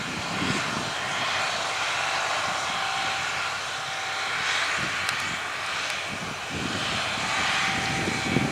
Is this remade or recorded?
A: recorded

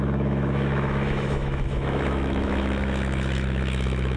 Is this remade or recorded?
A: remade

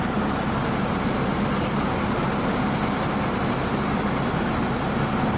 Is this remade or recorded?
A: recorded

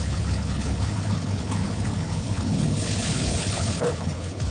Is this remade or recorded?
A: remade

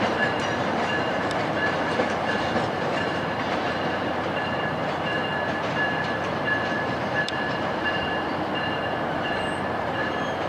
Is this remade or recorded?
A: remade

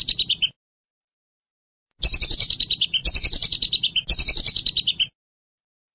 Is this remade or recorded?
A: recorded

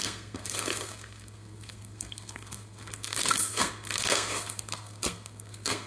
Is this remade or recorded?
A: remade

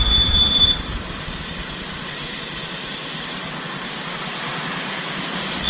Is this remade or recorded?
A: recorded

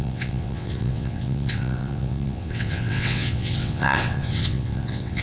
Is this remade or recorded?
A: remade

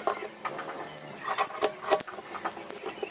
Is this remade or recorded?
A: recorded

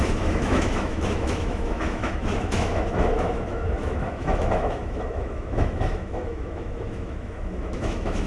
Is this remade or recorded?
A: remade